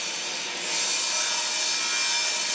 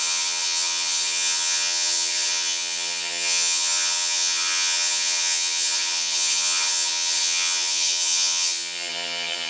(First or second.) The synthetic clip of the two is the second